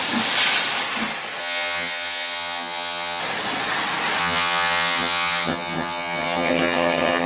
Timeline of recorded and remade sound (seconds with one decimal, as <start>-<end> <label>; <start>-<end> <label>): 0.0-1.4 recorded; 1.4-3.2 remade; 3.2-4.2 recorded; 4.2-7.3 remade